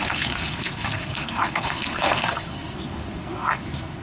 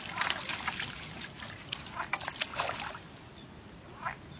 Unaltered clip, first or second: second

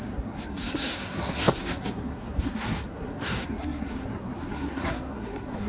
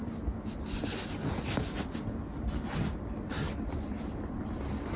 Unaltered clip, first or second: second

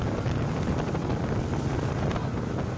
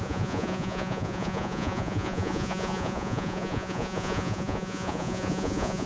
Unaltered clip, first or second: first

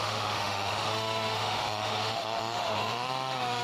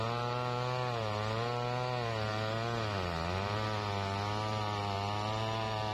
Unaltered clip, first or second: second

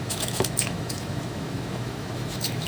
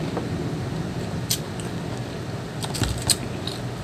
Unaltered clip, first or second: second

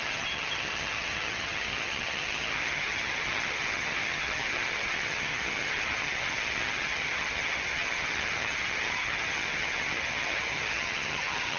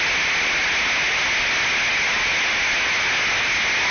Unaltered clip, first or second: second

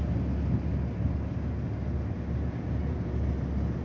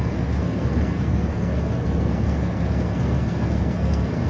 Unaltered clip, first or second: first